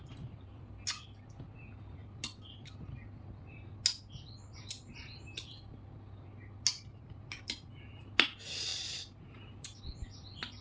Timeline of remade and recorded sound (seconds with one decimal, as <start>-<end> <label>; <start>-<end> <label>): 0.0-8.7 recorded; 8.7-9.8 remade; 9.8-10.6 recorded